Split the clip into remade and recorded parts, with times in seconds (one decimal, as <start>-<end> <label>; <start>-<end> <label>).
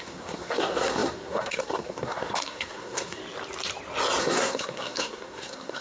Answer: 0.0-3.2 remade; 3.2-4.2 recorded; 4.2-5.8 remade